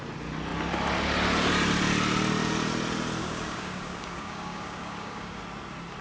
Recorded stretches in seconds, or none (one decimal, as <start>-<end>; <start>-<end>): 0.0-3.2; 5.4-6.0